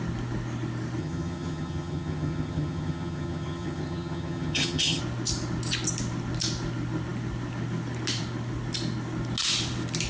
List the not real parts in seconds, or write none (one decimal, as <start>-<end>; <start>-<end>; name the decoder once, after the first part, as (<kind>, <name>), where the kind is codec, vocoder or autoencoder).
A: 1.0-5.0 (vocoder, HiFi-GAN)